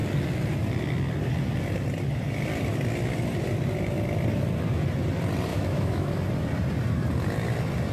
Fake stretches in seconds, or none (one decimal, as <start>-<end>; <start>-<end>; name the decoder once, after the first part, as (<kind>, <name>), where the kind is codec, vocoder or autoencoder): 5.5-6.1 (autoencoder, DAC-VAE)